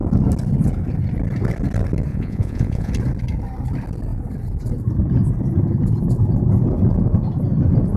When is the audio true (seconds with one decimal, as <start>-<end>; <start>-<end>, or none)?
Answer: 0.0-2.1; 2.9-8.0

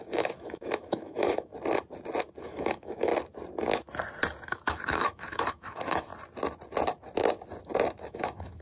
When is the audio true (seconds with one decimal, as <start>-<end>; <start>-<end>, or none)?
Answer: 1.5-2.4; 3.1-4.5; 6.1-8.0